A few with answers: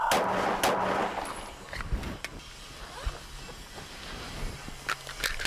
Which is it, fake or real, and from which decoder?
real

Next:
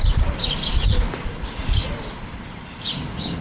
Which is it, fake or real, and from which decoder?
real